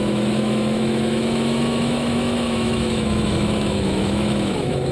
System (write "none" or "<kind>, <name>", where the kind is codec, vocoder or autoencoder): autoencoder, DAC-VAE